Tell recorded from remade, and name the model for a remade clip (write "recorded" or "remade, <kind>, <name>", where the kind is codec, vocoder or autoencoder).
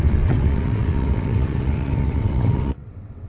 remade, vocoder, WaveNeXt